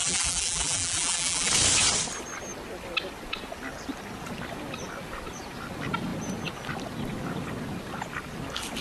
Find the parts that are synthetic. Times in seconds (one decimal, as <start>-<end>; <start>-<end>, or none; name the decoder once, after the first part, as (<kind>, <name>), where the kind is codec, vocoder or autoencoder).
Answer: 0.0-1.5 (vocoder, BigVGAN v2)